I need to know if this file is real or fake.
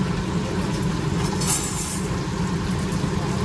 real